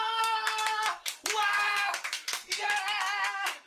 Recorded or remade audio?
remade